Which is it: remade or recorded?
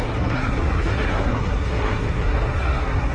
remade